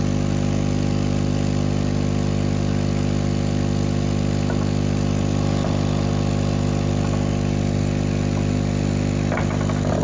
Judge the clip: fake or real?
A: real